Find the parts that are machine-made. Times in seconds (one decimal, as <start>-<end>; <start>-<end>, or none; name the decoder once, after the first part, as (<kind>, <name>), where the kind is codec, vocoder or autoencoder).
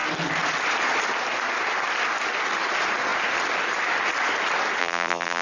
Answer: 4.8-5.4 (vocoder, BigVGAN v2)